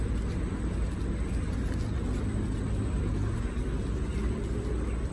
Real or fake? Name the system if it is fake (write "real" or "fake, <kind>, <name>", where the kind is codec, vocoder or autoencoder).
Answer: real